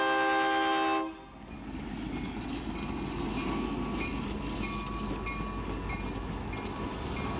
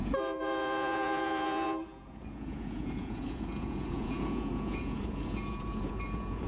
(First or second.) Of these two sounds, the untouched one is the first